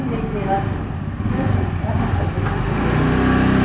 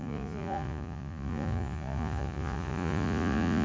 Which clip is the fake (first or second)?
second